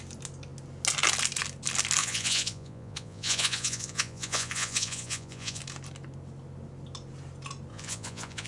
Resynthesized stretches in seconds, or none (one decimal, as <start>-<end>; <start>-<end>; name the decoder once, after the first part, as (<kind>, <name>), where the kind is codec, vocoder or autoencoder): 2.0-5.6 (vocoder, Vocos); 7.7-8.5